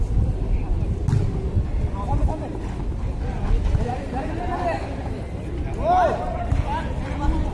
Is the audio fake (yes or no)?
no